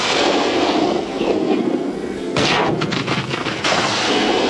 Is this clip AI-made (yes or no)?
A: yes